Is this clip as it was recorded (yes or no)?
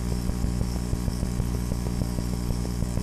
no